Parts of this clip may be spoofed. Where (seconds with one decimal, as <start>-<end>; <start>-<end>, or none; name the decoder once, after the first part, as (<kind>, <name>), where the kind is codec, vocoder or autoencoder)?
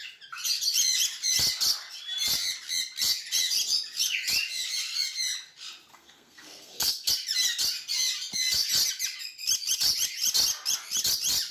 5.9-7.1 (codec, SNAC)